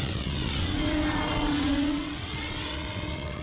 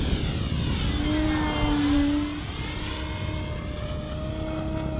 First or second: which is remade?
first